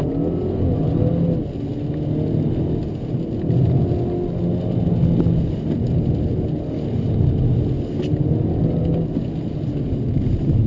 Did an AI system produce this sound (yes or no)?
no